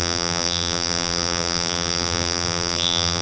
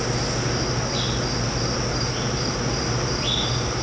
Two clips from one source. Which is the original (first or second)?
second